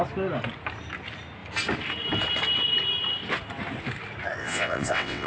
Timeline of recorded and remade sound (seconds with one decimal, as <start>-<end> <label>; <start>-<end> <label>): 0.0-4.4 recorded; 4.4-5.3 remade